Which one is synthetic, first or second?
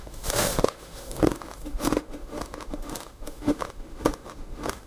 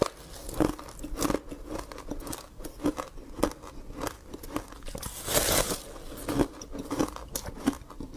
first